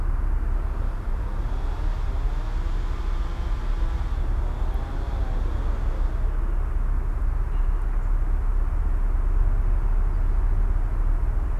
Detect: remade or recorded recorded